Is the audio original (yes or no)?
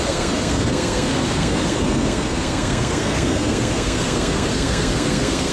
no